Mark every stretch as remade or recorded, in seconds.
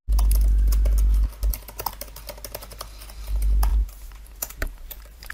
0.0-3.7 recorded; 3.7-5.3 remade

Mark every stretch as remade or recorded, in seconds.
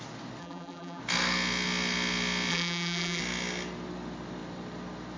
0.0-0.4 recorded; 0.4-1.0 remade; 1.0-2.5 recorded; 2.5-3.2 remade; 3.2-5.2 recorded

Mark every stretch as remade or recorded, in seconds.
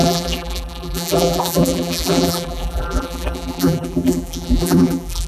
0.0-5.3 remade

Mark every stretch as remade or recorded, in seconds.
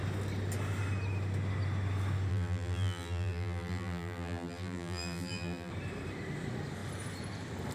0.0-2.3 recorded; 2.3-5.7 remade; 5.7-7.7 recorded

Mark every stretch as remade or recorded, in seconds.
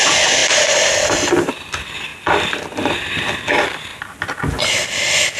0.0-0.4 recorded; 0.4-1.5 remade; 1.5-5.4 recorded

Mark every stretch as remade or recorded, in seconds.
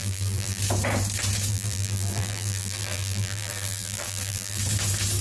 0.0-0.6 remade; 0.6-1.5 recorded; 1.5-4.6 remade; 4.6-5.2 recorded